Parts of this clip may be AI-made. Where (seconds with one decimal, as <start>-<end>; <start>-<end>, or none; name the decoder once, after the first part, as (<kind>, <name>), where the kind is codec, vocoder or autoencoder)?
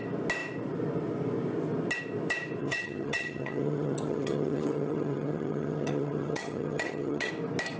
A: 2.6-7.3 (vocoder, HiFi-GAN)